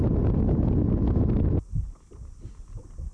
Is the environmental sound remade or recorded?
recorded